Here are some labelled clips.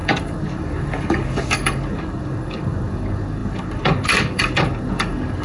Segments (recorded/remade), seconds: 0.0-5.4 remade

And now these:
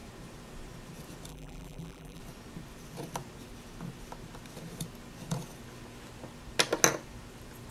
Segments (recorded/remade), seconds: 0.0-1.3 recorded; 1.3-2.2 remade; 2.2-7.7 recorded